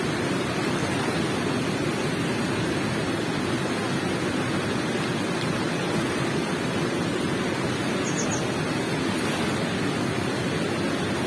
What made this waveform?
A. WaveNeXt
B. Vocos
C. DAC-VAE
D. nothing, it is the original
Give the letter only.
D